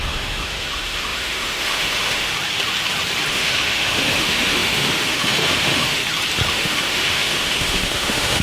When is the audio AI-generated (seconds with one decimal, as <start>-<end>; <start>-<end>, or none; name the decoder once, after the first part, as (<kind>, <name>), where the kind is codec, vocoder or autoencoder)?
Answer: 0.0-2.3 (autoencoder, DAC-VAE); 3.3-6.0; 6.5-8.4